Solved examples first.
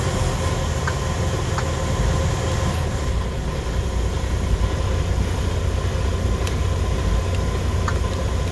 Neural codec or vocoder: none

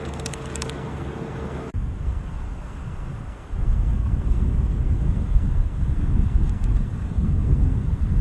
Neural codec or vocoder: codec, SNAC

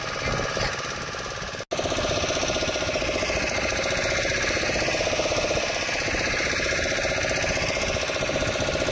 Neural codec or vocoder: none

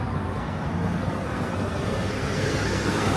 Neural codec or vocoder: codec, SNAC